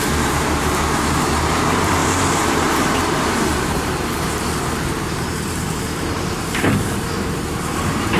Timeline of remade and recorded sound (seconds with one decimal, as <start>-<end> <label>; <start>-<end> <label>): 0.0-8.2 remade